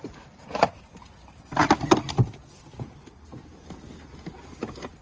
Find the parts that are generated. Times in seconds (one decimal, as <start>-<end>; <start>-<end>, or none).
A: none